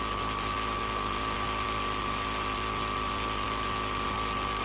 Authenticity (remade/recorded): recorded